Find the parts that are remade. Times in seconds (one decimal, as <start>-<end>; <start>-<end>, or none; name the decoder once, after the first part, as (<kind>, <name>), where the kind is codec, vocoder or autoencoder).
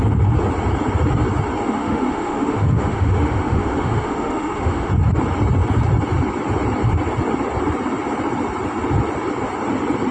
1.6-4.9 (autoencoder, DAC-VAE)